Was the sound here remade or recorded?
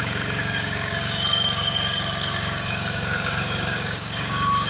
remade